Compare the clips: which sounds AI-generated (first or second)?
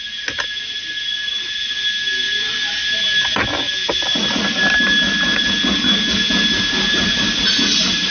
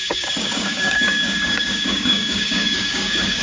second